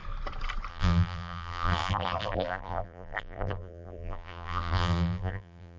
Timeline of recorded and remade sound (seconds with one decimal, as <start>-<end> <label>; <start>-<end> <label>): 0.0-0.7 recorded; 0.7-5.8 remade